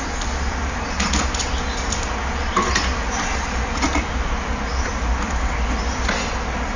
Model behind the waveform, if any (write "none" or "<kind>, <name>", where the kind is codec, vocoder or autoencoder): none